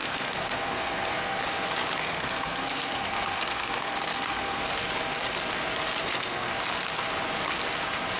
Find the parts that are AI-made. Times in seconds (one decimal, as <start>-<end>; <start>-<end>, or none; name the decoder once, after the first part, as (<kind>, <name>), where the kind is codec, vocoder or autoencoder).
0.0-1.4 (codec, SNAC); 2.0-4.6; 6.0-6.5